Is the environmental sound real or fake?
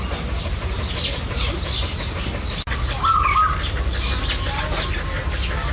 real